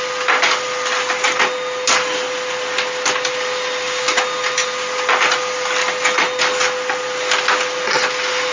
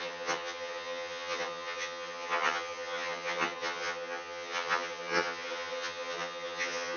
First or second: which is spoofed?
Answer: second